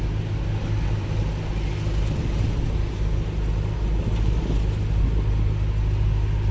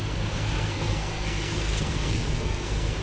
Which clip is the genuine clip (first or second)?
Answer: first